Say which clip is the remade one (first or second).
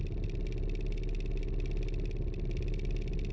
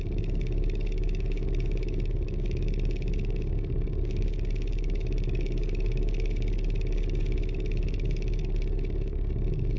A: second